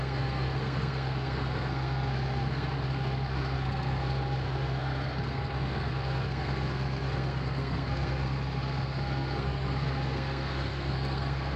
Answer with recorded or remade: remade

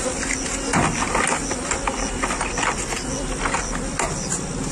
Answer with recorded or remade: recorded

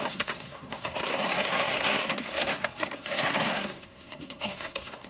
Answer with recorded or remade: remade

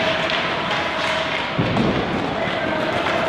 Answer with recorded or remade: recorded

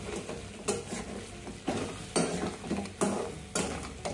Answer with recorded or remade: recorded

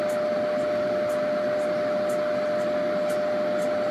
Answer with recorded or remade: recorded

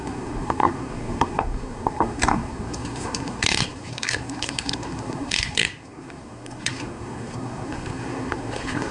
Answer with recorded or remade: remade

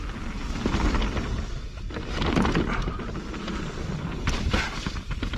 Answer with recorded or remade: recorded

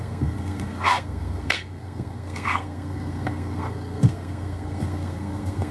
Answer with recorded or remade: remade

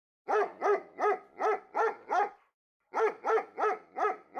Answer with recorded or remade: recorded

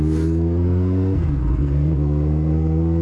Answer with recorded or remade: remade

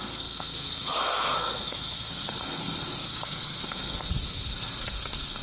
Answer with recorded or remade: remade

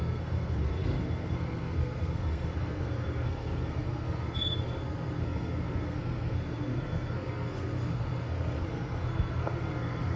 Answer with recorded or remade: remade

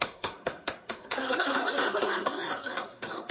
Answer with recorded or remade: remade